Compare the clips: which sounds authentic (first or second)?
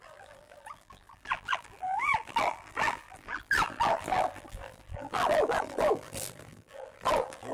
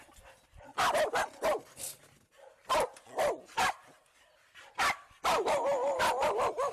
second